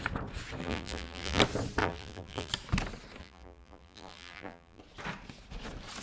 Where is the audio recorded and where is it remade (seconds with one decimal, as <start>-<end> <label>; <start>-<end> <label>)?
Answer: 0.0-0.6 recorded; 0.6-1.4 remade; 1.4-1.8 recorded; 1.8-2.5 remade; 2.5-3.2 recorded; 3.2-4.8 remade; 4.8-6.0 recorded